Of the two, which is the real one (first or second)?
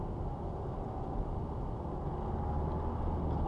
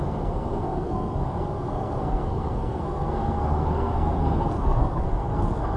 first